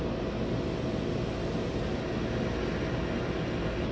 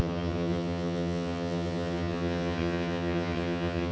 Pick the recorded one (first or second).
first